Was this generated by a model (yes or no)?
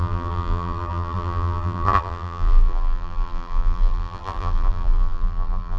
yes